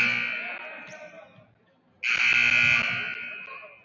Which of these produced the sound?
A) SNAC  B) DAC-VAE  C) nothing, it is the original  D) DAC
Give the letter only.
C